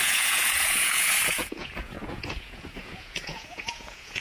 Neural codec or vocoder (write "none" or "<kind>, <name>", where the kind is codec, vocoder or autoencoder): vocoder, Vocos